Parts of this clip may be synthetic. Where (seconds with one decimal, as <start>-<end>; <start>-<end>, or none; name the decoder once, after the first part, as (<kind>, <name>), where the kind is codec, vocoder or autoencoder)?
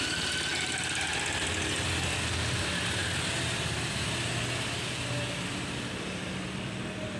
none